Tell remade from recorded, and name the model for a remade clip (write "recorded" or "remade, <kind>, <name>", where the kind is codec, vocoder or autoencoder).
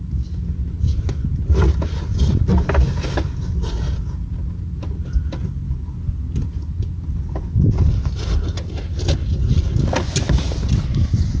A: recorded